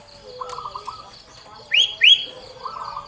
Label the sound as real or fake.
real